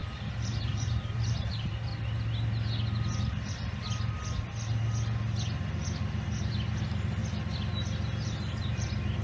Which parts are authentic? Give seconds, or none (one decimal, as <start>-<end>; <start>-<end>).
0.0-0.6; 1.9-6.8; 7.2-8.6